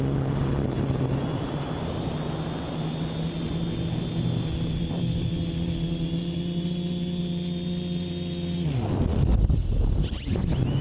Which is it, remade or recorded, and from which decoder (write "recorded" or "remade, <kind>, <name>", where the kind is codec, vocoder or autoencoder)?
recorded